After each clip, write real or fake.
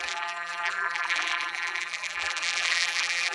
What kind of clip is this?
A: fake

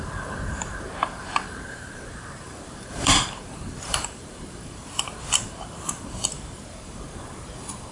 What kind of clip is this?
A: fake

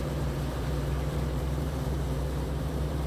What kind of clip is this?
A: fake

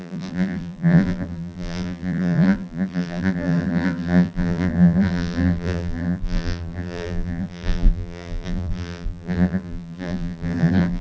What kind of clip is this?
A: fake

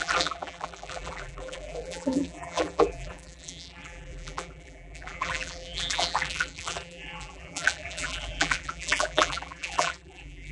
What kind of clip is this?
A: fake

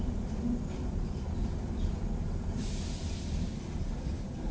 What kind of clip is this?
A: real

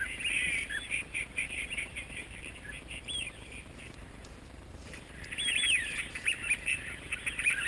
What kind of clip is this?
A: fake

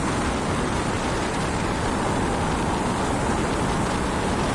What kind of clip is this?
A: fake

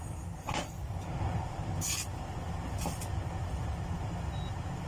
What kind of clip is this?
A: real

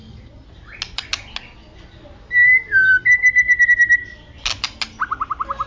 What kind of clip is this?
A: real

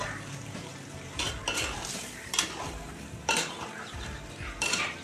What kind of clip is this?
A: fake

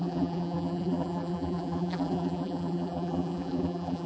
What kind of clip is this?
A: fake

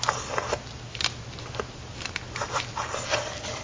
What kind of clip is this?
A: real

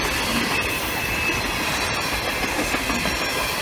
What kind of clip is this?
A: real